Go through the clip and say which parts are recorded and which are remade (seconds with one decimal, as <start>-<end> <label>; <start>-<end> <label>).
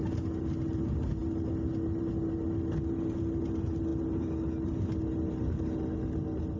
0.0-6.6 recorded